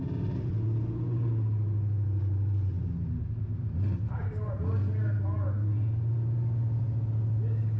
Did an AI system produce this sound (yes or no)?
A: no